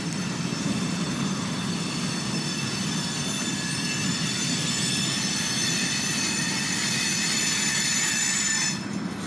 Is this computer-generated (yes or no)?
no